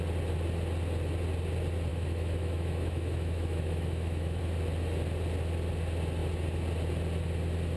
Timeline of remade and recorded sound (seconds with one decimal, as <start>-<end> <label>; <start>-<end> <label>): 0.0-1.9 recorded; 1.9-4.4 remade; 4.4-7.8 recorded